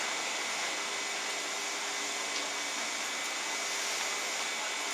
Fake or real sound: real